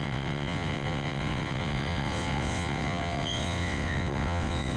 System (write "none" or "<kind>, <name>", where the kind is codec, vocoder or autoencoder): vocoder, WaveNeXt